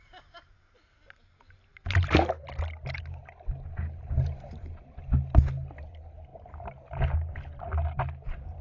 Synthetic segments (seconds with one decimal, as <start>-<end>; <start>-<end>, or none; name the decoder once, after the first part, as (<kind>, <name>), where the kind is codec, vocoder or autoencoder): none